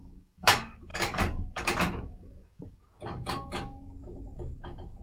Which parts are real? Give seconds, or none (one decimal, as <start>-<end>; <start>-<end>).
none